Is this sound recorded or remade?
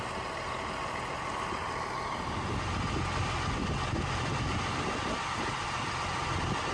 recorded